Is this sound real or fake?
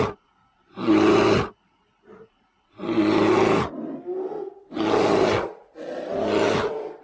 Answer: real